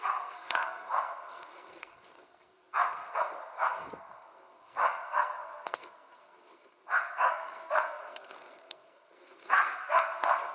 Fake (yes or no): yes